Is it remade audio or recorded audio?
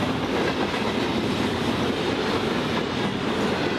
remade